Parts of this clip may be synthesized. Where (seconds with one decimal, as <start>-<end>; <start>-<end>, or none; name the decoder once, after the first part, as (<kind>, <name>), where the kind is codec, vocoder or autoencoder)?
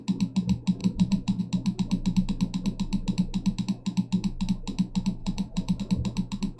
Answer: 0.8-1.4 (vocoder, BigVGAN v2); 5.2-5.8